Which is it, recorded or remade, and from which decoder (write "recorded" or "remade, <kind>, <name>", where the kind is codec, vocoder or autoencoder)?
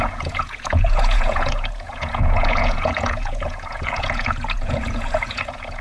remade, vocoder, Vocos